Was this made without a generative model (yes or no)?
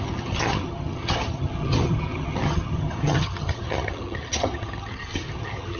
no